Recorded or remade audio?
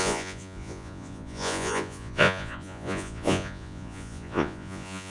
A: remade